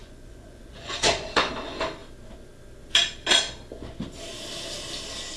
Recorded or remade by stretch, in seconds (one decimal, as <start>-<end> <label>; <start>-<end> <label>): 0.0-1.5 remade; 1.5-5.4 recorded